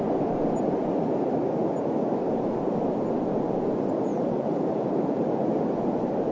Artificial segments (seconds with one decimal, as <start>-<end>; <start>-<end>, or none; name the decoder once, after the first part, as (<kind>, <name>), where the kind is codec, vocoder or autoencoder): 4.1-5.2 (vocoder, BigVGAN v2)